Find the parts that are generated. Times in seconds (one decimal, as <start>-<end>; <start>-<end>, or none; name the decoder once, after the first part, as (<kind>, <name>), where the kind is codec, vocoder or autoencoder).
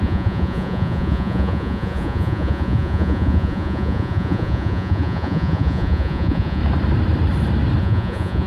0.0-6.6 (vocoder, Vocos); 7.8-8.5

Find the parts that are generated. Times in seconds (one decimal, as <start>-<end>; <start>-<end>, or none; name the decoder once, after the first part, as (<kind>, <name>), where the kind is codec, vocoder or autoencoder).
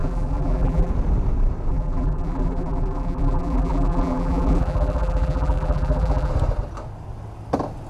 0.0-0.9 (vocoder, BigVGAN v2); 1.7-6.3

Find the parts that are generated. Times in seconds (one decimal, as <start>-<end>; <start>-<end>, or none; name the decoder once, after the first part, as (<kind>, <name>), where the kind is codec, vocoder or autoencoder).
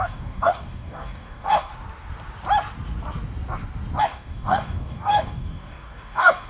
0.0-1.7 (codec, DAC); 4.0-6.5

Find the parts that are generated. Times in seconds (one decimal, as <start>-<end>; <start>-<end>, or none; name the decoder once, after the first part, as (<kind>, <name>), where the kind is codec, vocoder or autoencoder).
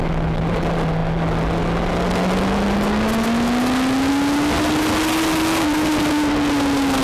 none